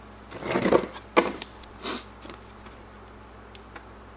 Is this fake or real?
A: real